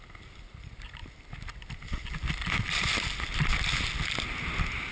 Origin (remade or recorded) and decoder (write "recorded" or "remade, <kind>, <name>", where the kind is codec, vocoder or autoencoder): recorded